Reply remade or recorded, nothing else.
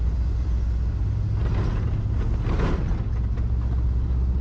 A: recorded